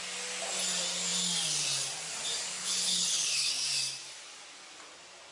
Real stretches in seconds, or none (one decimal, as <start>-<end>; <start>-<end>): 0.0-2.5; 3.5-5.3